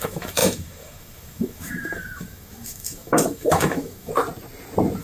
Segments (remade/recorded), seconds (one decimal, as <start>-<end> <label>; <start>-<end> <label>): 0.0-4.1 remade; 4.1-5.0 recorded